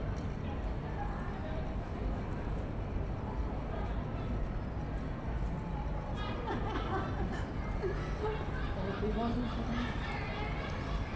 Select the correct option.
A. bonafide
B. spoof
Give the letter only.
A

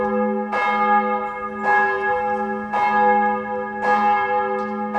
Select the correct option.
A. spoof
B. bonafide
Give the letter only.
B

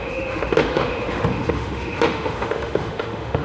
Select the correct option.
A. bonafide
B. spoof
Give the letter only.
B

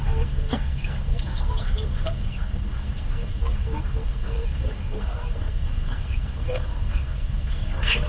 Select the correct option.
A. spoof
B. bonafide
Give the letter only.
A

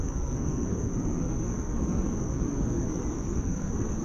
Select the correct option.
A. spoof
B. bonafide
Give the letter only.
A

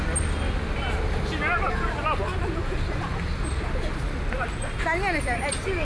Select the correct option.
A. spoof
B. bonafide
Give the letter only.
B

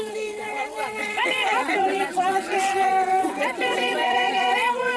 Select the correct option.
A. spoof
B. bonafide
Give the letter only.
A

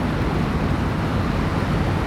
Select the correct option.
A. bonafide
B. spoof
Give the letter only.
A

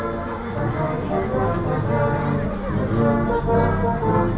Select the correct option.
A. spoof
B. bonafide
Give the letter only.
B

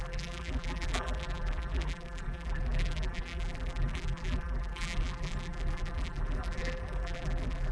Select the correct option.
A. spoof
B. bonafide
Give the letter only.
A